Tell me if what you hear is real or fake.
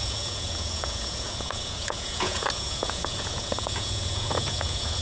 fake